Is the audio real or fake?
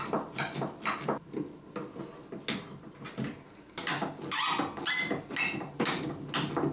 real